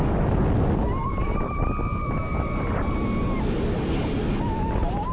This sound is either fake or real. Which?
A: real